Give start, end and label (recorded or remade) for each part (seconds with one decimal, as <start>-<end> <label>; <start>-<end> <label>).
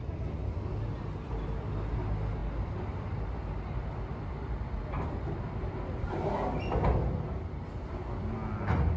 0.0-9.0 recorded